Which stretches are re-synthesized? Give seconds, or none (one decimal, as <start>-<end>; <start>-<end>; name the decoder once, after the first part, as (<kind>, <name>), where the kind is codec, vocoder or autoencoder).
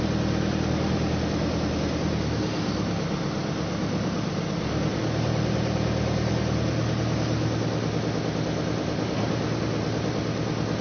none